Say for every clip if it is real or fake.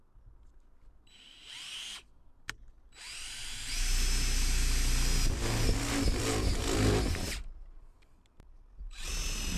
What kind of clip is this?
real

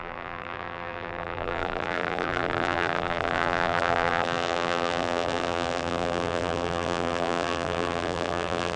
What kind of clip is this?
fake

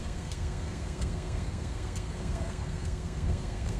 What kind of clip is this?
fake